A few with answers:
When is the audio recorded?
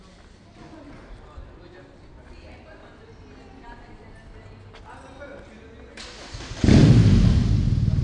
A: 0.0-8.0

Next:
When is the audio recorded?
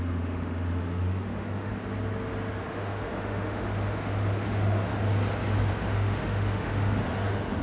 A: 1.7-2.6; 4.9-5.7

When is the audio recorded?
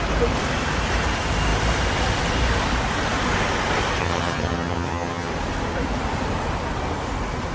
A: 0.0-4.0; 5.3-7.5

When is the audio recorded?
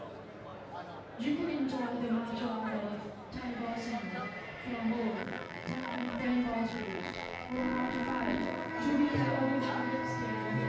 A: 0.0-5.2; 6.2-6.7; 8.7-10.7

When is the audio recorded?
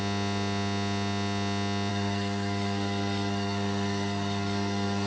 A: 0.0-1.9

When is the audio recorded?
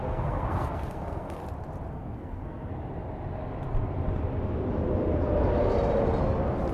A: 1.4-1.9; 2.7-6.7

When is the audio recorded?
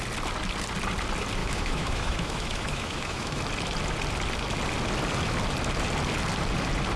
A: 0.0-1.4; 3.4-7.0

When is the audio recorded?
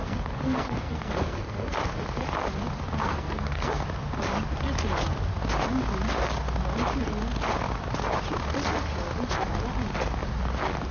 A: 1.8-3.0; 3.8-10.9